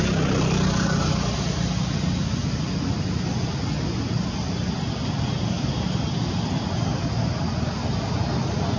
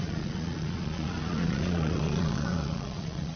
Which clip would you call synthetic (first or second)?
second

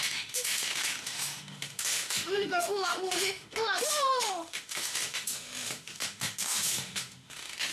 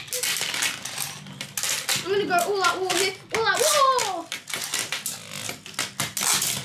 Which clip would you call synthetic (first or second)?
first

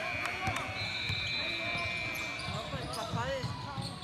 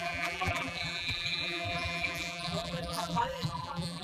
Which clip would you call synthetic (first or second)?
second